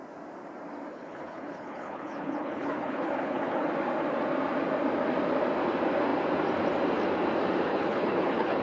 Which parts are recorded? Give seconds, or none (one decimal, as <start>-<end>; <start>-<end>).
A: 0.0-0.9; 3.7-7.7